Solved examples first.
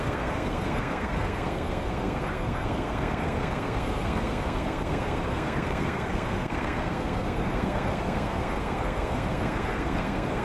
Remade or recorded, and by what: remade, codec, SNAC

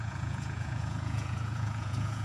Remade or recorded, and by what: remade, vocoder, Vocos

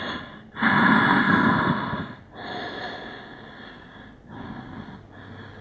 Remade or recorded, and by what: recorded